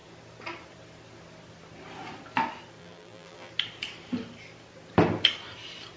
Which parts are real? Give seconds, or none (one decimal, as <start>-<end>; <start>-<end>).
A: 0.0-2.8; 3.5-6.0